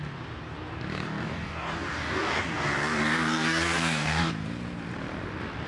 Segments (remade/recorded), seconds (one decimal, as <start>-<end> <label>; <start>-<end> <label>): 0.0-0.9 recorded; 0.9-4.3 remade; 4.3-5.7 recorded